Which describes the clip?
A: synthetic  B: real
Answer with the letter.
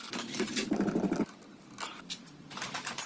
A